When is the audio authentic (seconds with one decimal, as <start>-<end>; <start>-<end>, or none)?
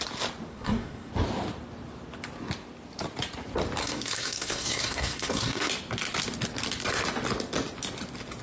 0.0-0.5; 1.1-3.8; 5.7-8.4